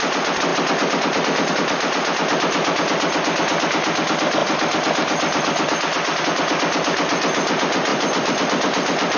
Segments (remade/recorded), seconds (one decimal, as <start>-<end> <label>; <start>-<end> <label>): 0.0-4.4 recorded; 4.4-6.2 remade; 6.2-7.9 recorded; 7.9-9.2 remade